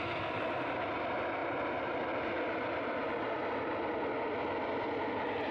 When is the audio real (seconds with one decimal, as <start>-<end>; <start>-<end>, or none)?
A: 0.0-5.5